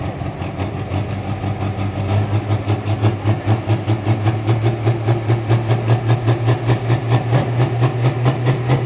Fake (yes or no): no